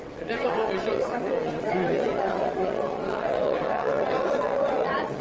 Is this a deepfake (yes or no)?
yes